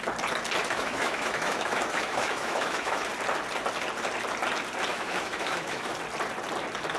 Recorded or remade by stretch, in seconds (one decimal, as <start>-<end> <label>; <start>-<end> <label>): 0.0-0.6 recorded; 0.6-3.1 remade; 3.1-4.9 recorded; 4.9-5.9 remade; 5.9-7.0 recorded